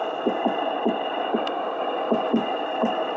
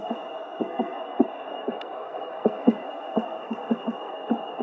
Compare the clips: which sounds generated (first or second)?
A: second